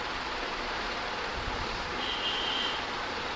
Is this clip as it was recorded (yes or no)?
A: yes